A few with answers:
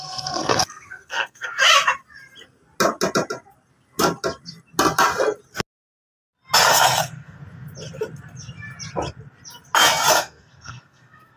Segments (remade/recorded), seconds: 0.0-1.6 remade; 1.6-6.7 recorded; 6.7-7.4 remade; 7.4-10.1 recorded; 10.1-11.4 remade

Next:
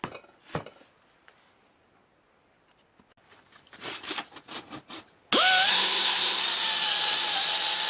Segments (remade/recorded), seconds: 0.0-5.7 recorded; 5.7-6.4 remade; 6.4-7.9 recorded

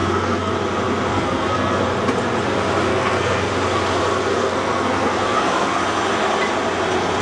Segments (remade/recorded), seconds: 0.0-0.5 remade; 0.5-1.1 recorded; 1.1-1.8 remade; 1.8-2.9 recorded; 2.9-3.5 remade; 3.5-4.4 recorded; 4.4-5.8 remade; 5.8-7.2 recorded

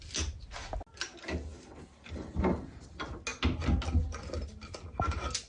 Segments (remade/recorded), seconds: 0.0-5.5 recorded

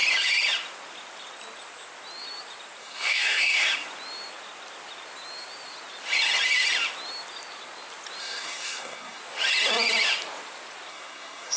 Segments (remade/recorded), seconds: 0.0-2.8 recorded; 2.8-3.7 remade; 3.7-8.2 recorded; 8.2-9.2 remade; 9.2-10.9 recorded; 10.9-11.6 remade

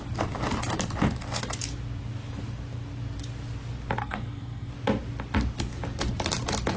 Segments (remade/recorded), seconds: 0.0-4.0 recorded; 4.0-4.7 remade; 4.7-6.8 recorded